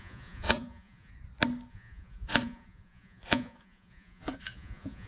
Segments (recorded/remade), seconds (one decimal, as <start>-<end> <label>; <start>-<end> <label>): 0.0-1.1 remade; 1.1-1.7 recorded; 1.7-5.1 remade